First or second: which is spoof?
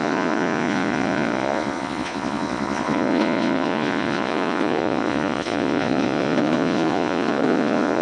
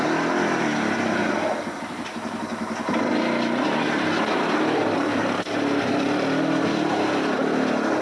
first